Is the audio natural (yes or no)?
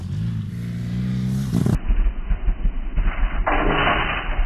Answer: yes